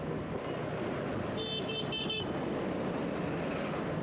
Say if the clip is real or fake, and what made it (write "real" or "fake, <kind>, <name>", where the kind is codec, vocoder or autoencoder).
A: real